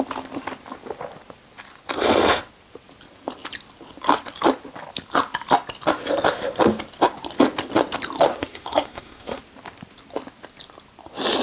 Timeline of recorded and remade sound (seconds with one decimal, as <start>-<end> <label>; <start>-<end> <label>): 0.0-8.3 recorded; 8.3-9.4 remade; 9.4-11.4 recorded